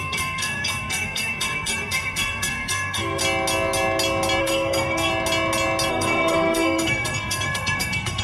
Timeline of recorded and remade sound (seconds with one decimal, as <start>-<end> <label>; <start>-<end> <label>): 0.0-3.2 remade; 3.2-4.4 recorded; 4.4-5.1 remade; 5.1-5.9 recorded; 5.9-8.2 remade